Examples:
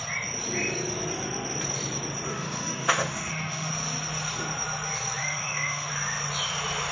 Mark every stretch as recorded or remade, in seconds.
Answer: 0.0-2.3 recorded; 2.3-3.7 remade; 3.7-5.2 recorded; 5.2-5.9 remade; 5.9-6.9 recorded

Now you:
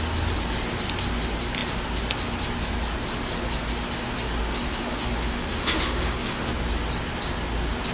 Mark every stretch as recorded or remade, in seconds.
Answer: 0.0-4.0 recorded; 4.0-6.5 remade; 6.5-7.9 recorded

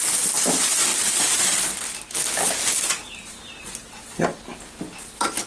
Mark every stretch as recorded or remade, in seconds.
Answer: 0.0-5.5 recorded

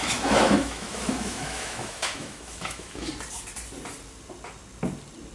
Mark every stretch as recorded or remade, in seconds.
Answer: 0.0-3.1 remade; 3.1-5.3 recorded

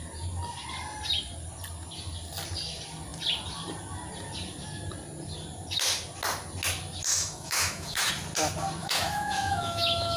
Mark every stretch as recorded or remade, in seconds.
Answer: 0.0-7.1 recorded; 7.1-8.1 remade; 8.1-8.8 recorded; 8.8-10.2 remade

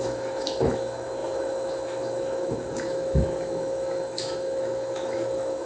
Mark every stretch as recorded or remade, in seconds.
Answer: 0.0-5.7 remade